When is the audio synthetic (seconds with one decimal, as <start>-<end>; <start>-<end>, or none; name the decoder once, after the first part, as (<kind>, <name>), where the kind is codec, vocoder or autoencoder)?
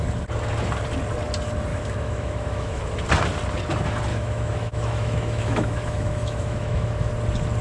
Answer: 1.7-2.8 (autoencoder, DAC-VAE); 4.1-7.1